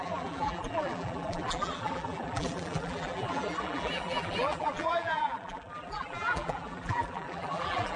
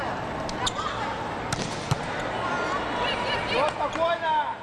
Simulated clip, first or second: first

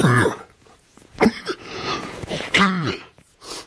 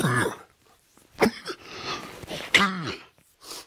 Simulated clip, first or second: first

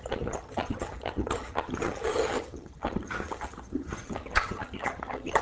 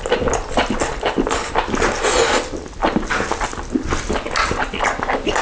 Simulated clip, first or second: first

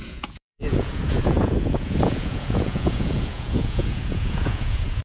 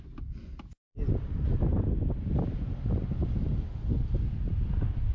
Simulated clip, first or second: first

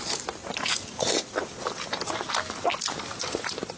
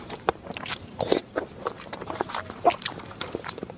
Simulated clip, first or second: second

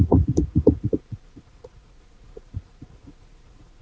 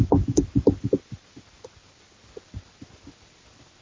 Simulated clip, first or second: first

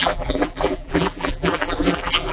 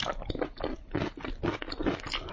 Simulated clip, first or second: first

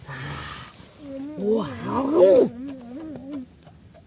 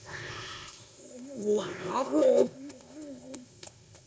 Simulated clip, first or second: second